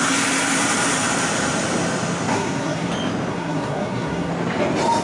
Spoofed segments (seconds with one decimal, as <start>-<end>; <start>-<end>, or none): 2.3-2.9; 3.3-4.3